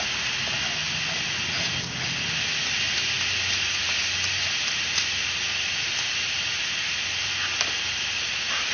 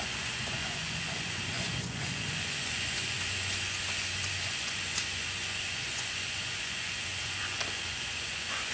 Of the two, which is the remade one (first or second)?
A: second